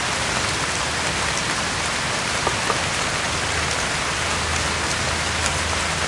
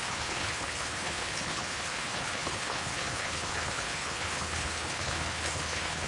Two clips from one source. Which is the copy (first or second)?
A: second